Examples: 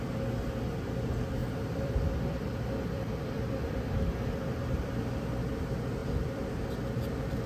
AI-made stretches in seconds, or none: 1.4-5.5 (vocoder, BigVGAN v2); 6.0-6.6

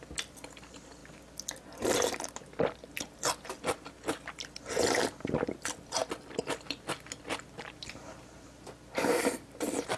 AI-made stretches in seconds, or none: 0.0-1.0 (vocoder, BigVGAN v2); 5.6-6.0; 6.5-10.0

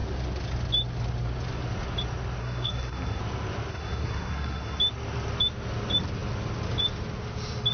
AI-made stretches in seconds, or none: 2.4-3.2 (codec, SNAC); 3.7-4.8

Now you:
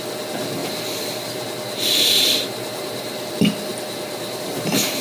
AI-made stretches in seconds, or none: 0.6-3.3 (vocoder, BigVGAN v2); 3.7-5.0

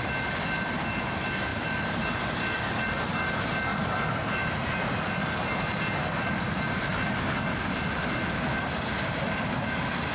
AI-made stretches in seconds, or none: 1.5-2.8 (vocoder, BigVGAN v2); 3.7-5.5

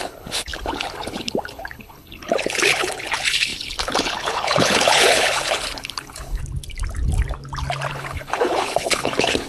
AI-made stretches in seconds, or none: 0.0-6.4 (codec, HILCodec); 7.9-9.5